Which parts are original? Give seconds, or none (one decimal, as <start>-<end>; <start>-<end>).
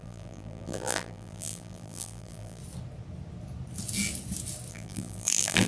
2.6-4.7